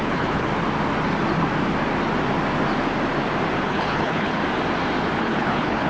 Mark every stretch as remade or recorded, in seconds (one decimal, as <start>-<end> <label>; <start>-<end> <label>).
0.0-0.5 remade; 0.5-3.6 recorded; 3.6-4.4 remade; 4.4-5.2 recorded; 5.2-5.9 remade